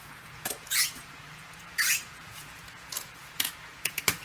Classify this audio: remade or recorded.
remade